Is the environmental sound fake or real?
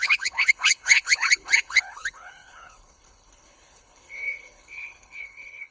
fake